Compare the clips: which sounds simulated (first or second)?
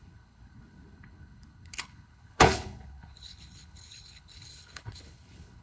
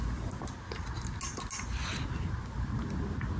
first